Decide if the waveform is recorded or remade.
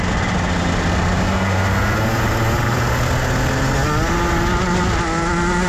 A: recorded